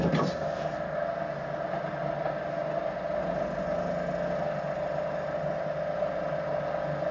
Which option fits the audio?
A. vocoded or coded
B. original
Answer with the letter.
B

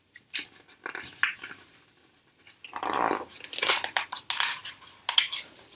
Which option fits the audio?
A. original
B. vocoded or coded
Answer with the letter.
A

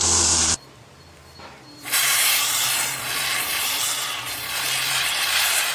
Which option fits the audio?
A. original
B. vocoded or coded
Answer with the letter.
B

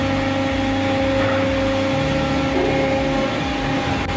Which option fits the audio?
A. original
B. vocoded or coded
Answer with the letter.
A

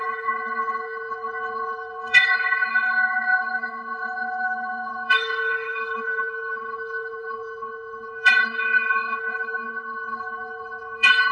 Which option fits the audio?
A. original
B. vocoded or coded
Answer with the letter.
B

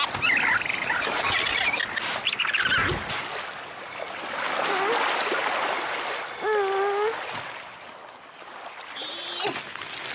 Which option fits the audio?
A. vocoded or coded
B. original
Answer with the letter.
B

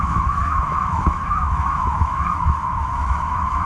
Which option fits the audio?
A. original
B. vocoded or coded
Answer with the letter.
B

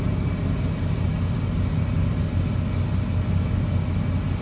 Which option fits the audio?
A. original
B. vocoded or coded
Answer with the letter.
A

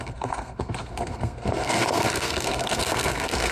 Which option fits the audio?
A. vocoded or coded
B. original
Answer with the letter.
A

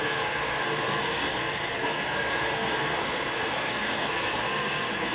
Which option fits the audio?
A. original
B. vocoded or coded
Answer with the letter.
B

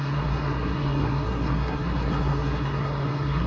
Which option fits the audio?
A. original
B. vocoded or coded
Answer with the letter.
B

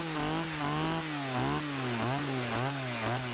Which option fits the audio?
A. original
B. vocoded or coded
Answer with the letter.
A